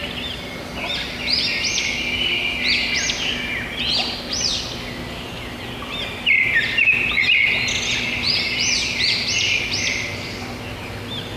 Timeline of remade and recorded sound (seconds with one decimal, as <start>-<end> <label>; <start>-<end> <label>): 0.0-11.4 recorded